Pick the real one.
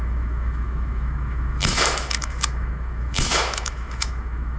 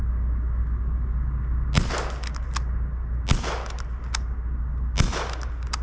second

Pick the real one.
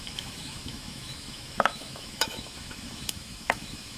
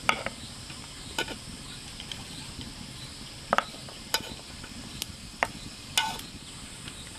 second